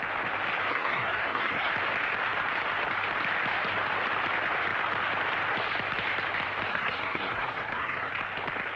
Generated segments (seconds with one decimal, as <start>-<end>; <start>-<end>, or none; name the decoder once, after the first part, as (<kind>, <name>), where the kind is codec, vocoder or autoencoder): 0.7-1.7 (codec, SNAC); 6.7-8.1